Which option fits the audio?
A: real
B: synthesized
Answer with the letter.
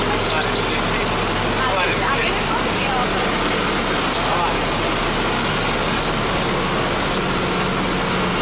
A